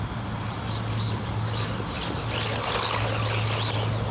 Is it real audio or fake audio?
real